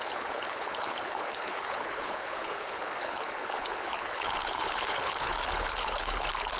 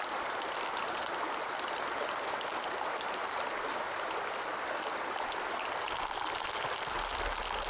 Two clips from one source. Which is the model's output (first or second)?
first